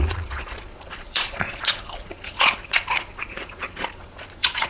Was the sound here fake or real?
fake